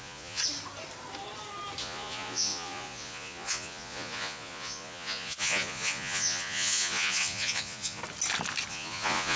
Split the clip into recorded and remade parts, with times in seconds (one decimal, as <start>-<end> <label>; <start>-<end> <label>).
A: 0.0-0.4 remade; 0.4-1.8 recorded; 1.8-8.0 remade; 8.0-8.7 recorded; 8.7-9.4 remade